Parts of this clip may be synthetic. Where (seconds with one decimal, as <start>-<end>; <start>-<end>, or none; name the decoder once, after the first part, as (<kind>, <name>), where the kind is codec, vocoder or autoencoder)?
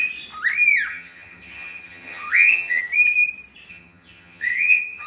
0.9-2.8 (vocoder, HiFi-GAN); 3.7-5.1